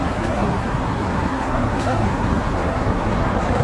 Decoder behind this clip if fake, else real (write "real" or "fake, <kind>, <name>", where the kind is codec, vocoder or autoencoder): fake, codec, SNAC